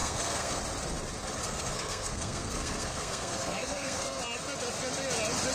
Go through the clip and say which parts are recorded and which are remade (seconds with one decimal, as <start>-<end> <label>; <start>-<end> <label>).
0.0-0.6 remade; 0.6-1.4 recorded; 1.4-4.2 remade; 4.2-5.5 recorded